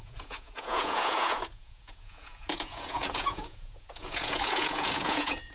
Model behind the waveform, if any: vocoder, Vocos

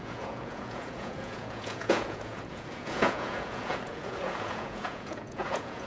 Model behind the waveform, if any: vocoder, Vocos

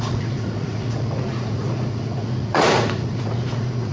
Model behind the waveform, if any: vocoder, Vocos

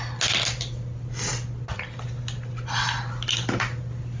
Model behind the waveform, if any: none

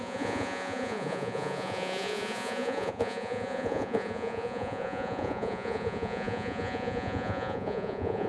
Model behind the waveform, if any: vocoder, Vocos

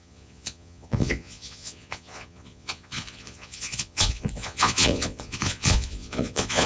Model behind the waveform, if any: vocoder, Vocos